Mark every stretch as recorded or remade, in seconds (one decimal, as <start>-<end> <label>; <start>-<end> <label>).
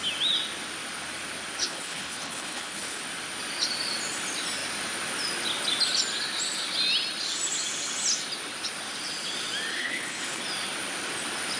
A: 0.0-1.6 recorded; 1.6-3.0 remade; 3.0-9.7 recorded; 9.7-10.4 remade; 10.4-11.6 recorded